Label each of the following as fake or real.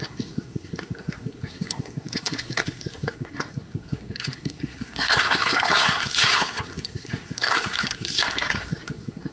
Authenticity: fake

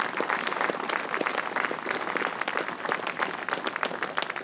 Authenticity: real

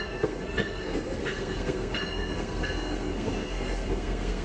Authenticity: fake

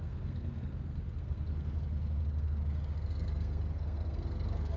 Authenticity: fake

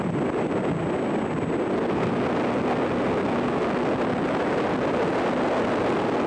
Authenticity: real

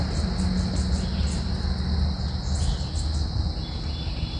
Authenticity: real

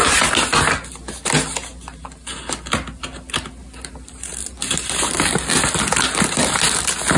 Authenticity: real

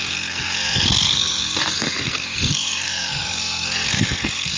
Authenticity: fake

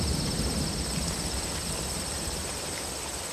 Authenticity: real